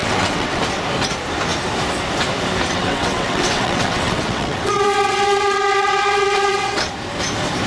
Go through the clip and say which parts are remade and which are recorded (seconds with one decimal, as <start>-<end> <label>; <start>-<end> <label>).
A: 0.0-0.6 remade; 0.6-2.7 recorded; 2.7-6.9 remade; 6.9-7.7 recorded